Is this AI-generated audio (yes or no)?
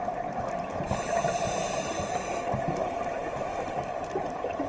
no